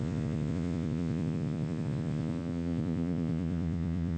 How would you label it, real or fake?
fake